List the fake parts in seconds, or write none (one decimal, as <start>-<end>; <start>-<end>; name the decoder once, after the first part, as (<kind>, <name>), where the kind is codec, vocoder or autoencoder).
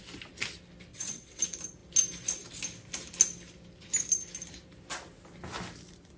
0.9-1.4 (vocoder, WaveNeXt)